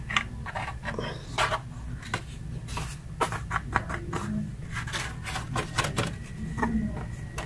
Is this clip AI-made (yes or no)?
no